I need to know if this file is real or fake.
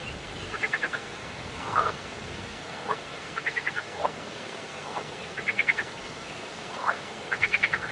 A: fake